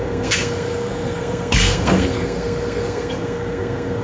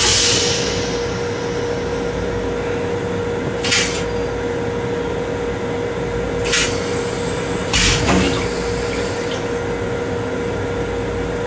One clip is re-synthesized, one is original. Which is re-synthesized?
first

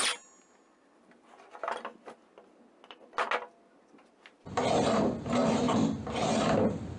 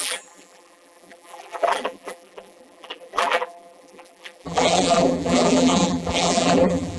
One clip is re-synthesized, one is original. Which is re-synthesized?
second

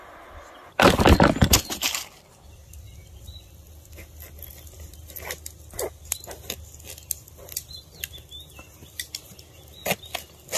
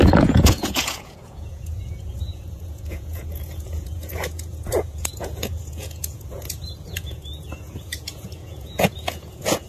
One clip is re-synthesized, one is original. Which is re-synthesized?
second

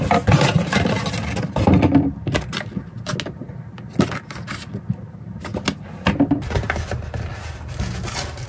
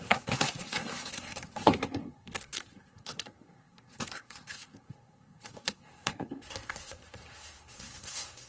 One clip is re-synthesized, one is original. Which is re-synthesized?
second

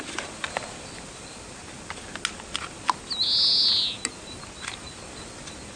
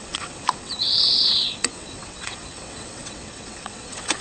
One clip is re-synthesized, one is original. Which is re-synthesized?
second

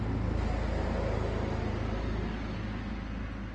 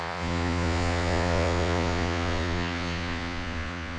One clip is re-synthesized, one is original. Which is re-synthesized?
second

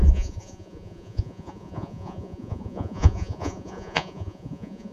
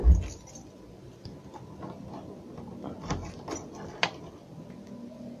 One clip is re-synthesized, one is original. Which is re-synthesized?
first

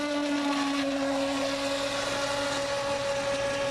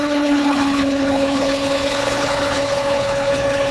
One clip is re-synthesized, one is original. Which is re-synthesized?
second